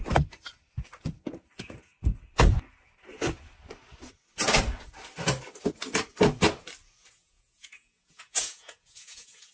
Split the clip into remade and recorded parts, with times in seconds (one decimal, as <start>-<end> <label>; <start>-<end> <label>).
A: 0.0-7.0 recorded; 7.0-9.5 remade